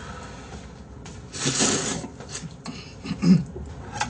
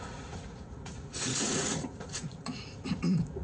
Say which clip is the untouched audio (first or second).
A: first